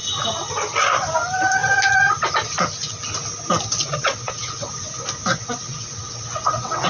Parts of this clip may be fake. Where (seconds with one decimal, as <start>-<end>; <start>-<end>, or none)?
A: 3.8-4.7; 5.3-6.9